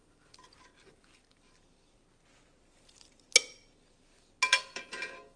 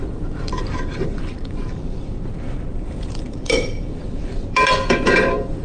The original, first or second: first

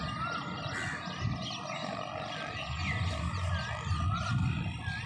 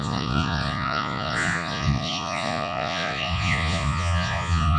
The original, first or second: first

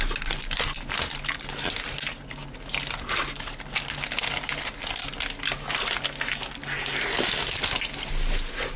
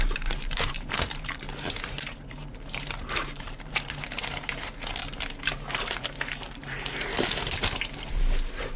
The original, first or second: first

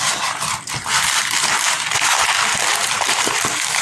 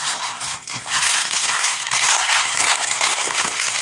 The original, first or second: first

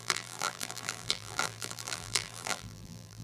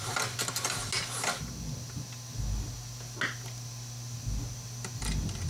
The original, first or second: second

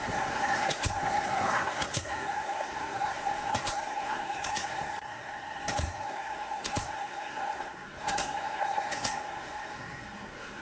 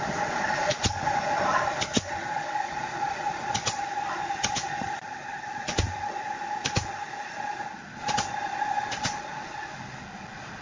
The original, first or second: second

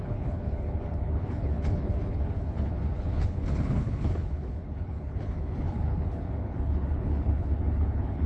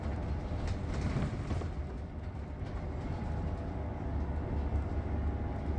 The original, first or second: second